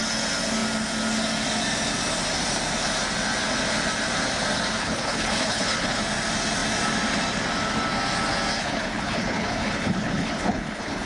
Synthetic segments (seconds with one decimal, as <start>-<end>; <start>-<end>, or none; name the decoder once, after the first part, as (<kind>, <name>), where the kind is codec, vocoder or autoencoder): 4.8-6.0 (codec, HILCodec); 8.6-11.1